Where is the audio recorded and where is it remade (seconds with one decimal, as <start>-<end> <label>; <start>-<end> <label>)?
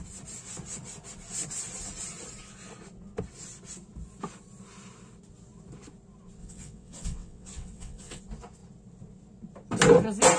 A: 0.0-6.4 recorded; 6.4-8.2 remade; 8.2-10.4 recorded